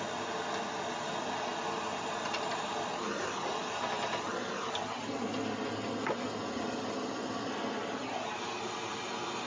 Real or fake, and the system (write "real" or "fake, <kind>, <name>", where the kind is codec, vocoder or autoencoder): real